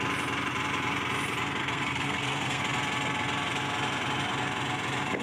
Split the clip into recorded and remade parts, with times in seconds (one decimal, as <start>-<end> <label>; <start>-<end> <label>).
0.0-1.6 recorded; 1.6-2.6 remade; 2.6-5.2 recorded